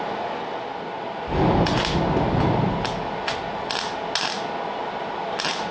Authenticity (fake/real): real